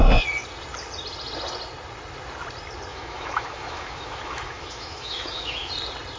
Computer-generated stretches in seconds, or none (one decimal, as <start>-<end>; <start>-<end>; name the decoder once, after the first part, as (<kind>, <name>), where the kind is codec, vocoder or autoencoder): 2.9-5.7 (autoencoder, DAC-VAE)